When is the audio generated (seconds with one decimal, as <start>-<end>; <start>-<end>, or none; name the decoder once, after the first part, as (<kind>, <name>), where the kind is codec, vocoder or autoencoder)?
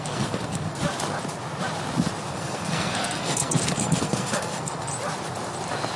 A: 0.0-0.8 (codec, SNAC); 2.3-4.9